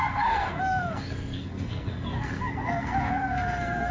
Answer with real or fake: fake